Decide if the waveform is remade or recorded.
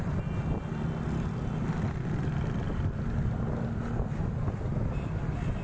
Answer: recorded